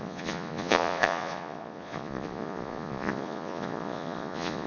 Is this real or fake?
fake